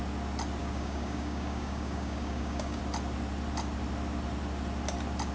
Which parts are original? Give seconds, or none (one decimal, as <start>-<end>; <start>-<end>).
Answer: 0.0-0.6; 2.8-5.3